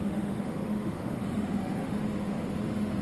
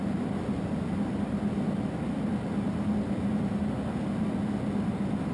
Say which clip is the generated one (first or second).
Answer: first